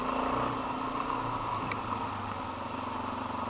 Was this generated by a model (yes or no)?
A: no